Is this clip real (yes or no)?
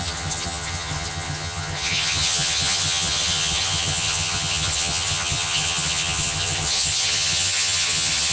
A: no